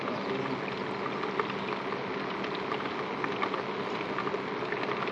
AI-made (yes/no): no